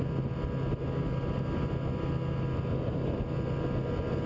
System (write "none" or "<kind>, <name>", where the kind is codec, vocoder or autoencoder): none